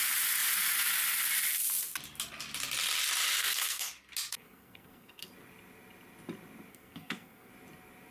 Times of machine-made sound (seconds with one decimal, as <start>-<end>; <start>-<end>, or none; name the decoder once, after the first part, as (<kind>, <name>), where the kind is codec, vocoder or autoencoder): 3.4-3.9 (codec, SNAC); 4.3-5.3; 6.7-7.5